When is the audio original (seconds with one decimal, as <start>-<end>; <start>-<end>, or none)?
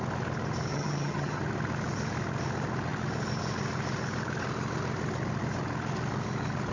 0.0-0.7; 1.4-6.7